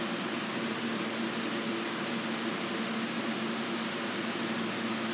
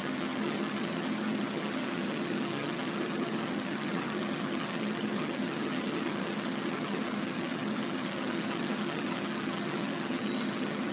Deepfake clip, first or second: second